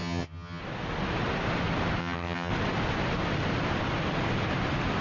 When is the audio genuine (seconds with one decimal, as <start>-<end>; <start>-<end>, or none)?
0.6-2.0; 2.5-5.0